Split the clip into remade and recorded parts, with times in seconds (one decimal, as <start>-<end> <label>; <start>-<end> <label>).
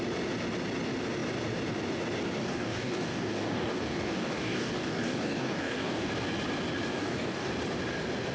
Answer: 0.0-2.4 recorded; 2.4-6.1 remade; 6.1-6.9 recorded; 6.9-7.5 remade; 7.5-8.3 recorded